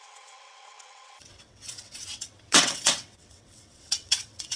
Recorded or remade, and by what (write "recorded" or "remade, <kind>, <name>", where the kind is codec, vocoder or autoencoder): remade, vocoder, WaveNeXt